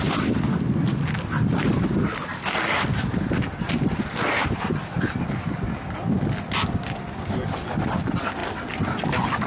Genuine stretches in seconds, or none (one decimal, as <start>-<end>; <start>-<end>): 0.0-9.5

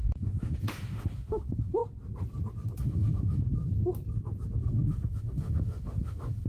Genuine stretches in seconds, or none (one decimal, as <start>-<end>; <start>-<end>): 1.8-2.8; 3.5-4.6

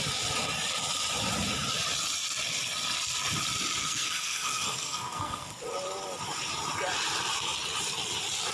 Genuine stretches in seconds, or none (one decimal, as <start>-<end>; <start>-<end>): 0.0-3.8; 5.5-8.5